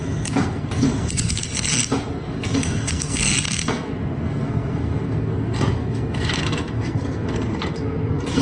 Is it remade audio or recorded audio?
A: remade